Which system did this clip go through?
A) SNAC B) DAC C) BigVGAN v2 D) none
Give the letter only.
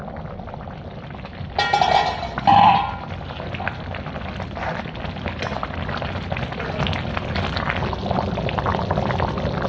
D